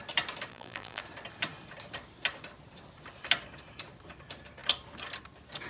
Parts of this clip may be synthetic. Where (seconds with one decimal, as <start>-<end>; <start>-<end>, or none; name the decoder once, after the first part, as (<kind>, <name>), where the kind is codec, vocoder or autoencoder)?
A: 0.5-1.0 (vocoder, BigVGAN v2)